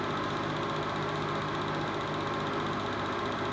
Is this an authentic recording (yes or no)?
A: yes